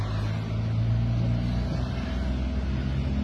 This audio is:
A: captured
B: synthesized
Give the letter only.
A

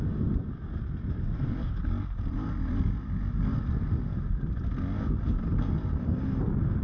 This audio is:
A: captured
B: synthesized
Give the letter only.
A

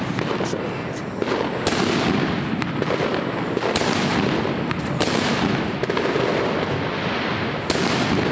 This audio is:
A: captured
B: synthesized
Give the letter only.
A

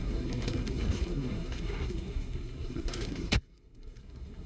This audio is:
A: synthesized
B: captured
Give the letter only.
A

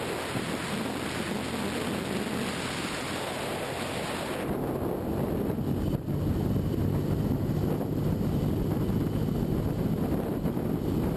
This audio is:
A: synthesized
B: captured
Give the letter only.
B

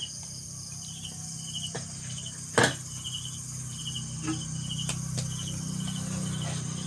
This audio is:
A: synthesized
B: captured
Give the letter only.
B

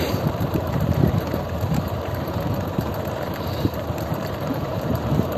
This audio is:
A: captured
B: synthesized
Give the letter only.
B